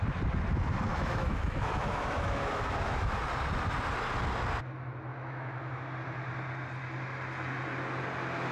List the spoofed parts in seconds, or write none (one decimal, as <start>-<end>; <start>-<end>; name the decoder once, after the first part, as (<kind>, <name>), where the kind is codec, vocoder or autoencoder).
0.9-3.2 (autoencoder, DAC-VAE); 5.1-5.7